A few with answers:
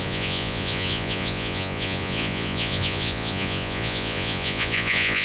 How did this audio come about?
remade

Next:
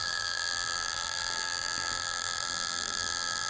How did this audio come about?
remade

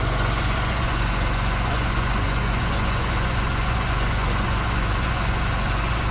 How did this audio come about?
remade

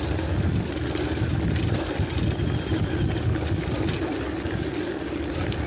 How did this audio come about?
recorded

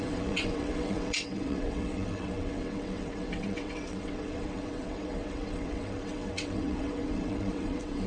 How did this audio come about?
remade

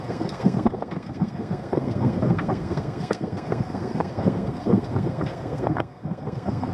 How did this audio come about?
remade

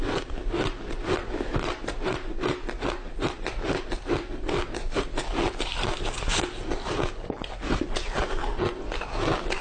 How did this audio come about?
recorded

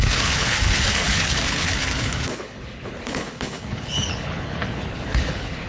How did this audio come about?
remade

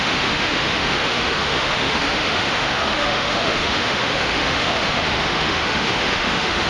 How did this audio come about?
remade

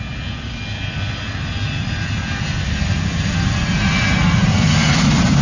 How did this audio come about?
recorded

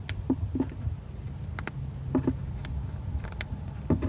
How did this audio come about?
recorded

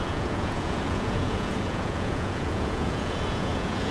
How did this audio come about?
remade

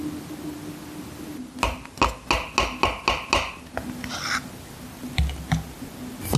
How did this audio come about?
recorded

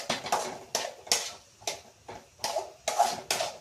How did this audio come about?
recorded